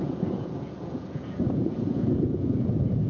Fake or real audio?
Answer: fake